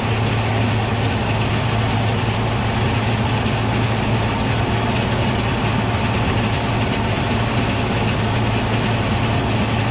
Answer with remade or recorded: recorded